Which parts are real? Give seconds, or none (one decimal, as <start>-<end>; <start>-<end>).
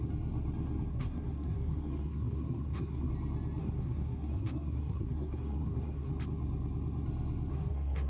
0.0-0.9; 3.1-3.6; 6.1-7.5